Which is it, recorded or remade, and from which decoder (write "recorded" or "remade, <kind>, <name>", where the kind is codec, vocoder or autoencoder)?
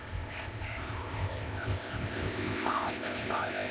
remade, codec, ZipCodec